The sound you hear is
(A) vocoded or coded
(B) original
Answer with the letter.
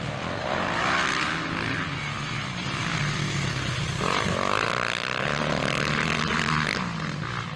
B